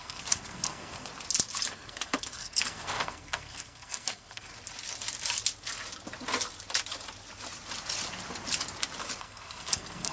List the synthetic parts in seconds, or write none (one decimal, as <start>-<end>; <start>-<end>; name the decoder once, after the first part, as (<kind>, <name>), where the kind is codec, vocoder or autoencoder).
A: 0.0-1.1 (codec, SNAC); 1.7-4.5; 9.2-10.1